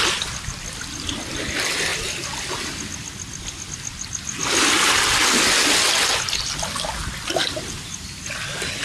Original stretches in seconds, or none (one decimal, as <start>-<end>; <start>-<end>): 0.0-8.8